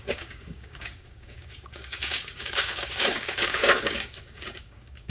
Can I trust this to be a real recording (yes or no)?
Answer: no